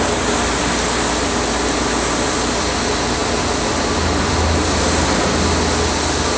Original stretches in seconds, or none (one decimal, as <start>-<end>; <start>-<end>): 0.0-3.2; 4.4-6.4